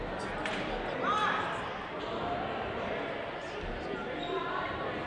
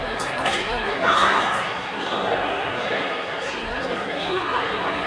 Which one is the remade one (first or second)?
second